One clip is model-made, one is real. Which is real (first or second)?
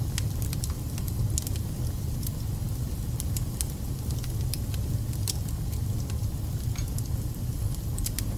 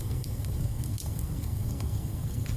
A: first